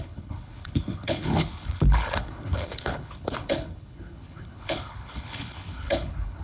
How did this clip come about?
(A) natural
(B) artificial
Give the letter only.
B